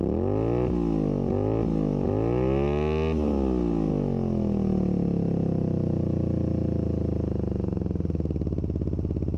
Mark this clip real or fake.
real